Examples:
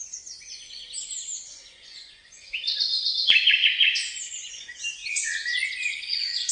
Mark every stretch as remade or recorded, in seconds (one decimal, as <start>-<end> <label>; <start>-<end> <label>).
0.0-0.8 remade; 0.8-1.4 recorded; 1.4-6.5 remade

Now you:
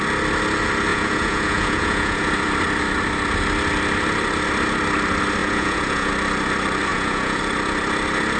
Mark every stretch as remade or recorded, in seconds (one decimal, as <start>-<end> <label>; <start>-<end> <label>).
0.0-0.9 recorded; 0.9-2.3 remade; 2.3-5.4 recorded; 5.4-6.1 remade; 6.1-6.9 recorded; 6.9-7.4 remade; 7.4-8.4 recorded

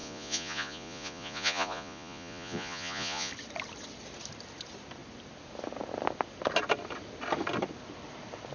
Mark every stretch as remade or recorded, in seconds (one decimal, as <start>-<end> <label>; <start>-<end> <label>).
0.0-3.3 remade; 3.3-8.5 recorded

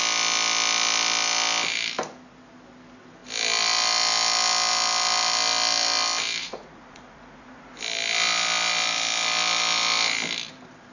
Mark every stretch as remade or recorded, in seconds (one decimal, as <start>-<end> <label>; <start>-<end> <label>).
0.0-6.4 recorded; 6.4-7.7 remade; 7.7-10.9 recorded

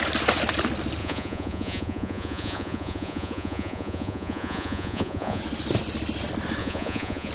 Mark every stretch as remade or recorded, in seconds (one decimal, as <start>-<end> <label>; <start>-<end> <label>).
0.0-1.0 recorded; 1.0-5.4 remade; 5.4-6.6 recorded; 6.6-7.3 remade

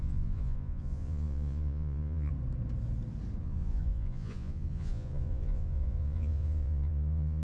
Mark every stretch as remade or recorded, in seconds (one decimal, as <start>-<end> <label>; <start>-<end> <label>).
0.0-2.3 remade; 2.3-3.4 recorded; 3.4-7.4 remade

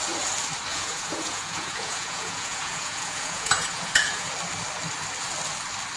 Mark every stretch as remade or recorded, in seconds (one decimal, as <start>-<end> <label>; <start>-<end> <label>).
0.0-0.7 recorded; 0.7-4.3 remade; 4.3-6.0 recorded